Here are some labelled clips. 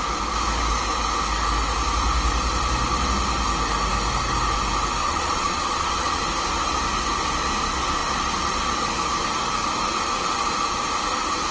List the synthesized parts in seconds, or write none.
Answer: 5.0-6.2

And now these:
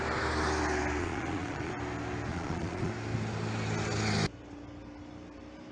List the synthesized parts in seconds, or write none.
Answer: 1.0-1.7; 2.3-2.9

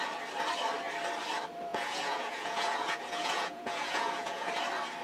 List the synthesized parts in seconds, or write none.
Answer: 1.7-4.5

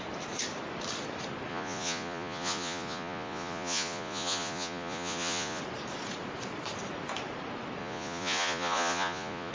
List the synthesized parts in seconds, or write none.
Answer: 1.5-5.6; 7.8-9.5

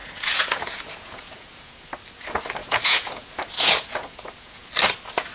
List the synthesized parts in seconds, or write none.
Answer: 0.0-1.9; 2.6-4.7

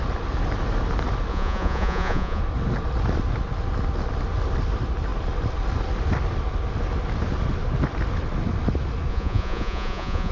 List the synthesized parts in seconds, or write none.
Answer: 1.3-2.4; 9.1-10.3